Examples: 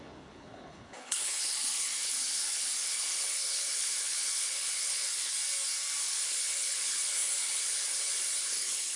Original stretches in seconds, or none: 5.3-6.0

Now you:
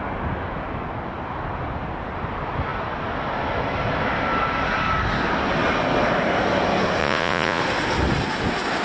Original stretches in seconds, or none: 0.0-7.0; 7.6-8.8

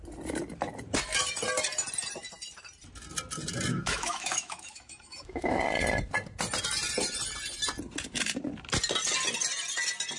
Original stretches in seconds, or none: 0.0-3.7; 5.6-10.2

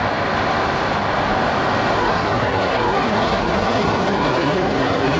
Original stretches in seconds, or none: 0.0-2.0